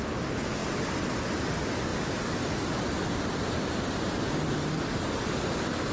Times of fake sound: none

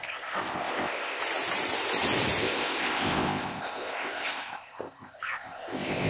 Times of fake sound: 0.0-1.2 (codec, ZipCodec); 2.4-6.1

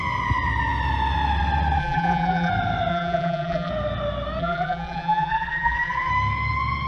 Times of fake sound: 1.8-2.5 (vocoder, BigVGAN v2); 2.9-3.7; 4.4-6.1

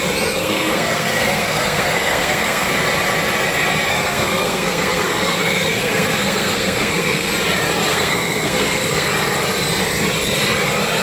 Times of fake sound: 0.4-2.7 (codec, SNAC); 3.9-7.3; 7.9-9.1

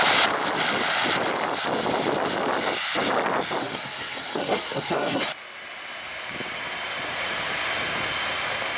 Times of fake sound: 3.6-5.3 (codec, SNAC)

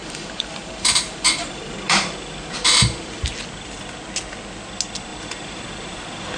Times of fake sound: 0.0-3.2 (vocoder, BigVGAN v2); 5.1-6.4

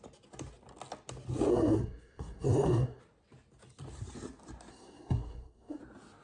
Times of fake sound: 1.5-3.0 (codec, SNAC); 4.7-5.8

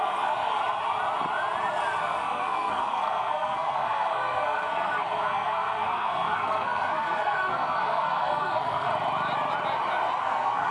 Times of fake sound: 0.0-0.6 (codec, SNAC); 2.0-8.9; 10.2-10.7